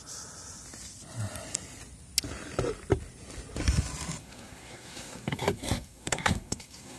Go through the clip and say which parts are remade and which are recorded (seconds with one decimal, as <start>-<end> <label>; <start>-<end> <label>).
0.0-4.2 recorded; 4.2-7.0 remade